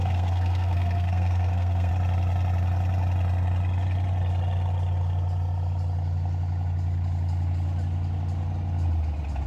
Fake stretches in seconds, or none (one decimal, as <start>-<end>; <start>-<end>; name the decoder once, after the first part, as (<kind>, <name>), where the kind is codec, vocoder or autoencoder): 0.0-1.9 (codec, SNAC)